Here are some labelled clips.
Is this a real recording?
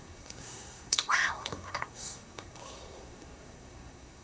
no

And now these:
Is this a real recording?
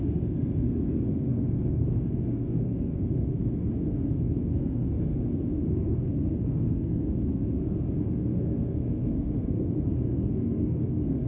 no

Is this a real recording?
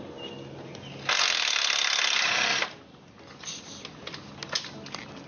yes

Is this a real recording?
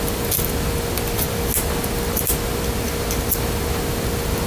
yes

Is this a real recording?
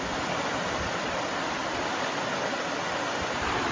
yes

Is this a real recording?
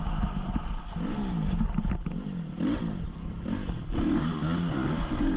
yes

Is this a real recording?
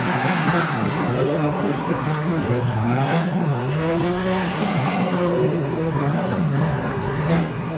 no